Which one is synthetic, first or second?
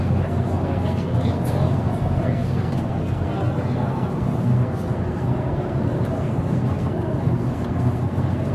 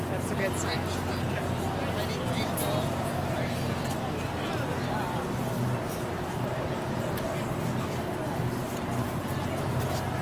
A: first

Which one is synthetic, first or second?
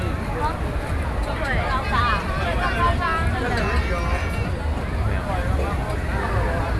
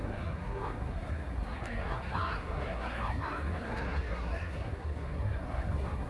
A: second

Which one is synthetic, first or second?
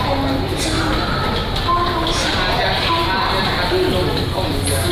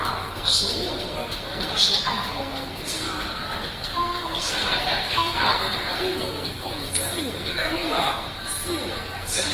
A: second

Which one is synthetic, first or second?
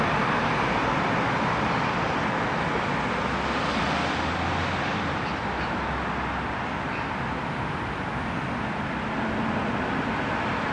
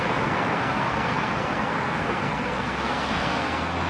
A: second